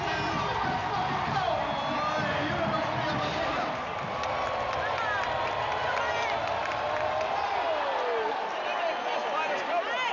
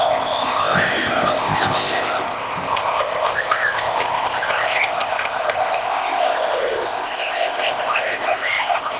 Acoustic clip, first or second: first